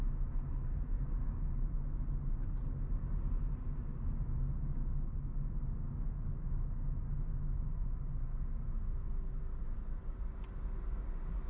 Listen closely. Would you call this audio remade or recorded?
recorded